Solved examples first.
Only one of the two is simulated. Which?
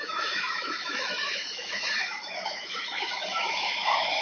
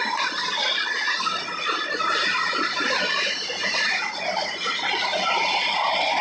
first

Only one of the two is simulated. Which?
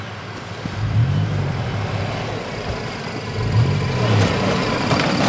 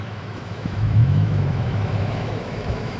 second